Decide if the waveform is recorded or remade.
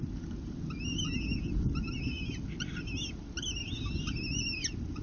recorded